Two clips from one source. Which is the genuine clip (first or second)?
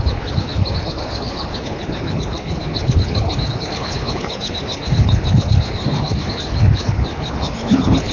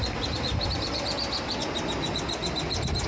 second